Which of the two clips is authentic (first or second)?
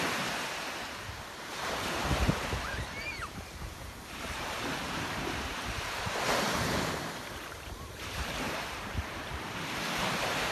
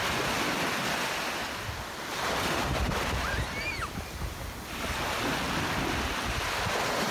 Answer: second